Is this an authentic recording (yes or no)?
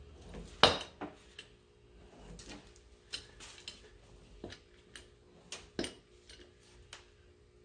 yes